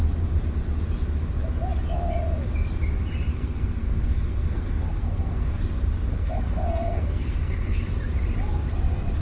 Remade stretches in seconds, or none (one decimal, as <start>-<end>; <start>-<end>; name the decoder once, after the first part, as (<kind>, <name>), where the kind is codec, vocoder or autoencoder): 3.3-5.6 (codec, SNAC); 6.1-7.8